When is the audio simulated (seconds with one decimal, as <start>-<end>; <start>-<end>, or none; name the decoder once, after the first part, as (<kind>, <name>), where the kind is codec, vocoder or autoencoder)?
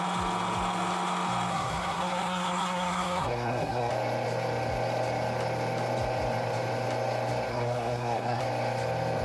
1.5-3.9 (codec, SNAC); 7.5-8.4